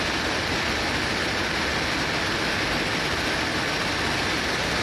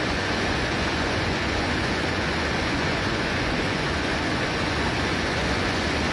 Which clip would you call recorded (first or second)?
first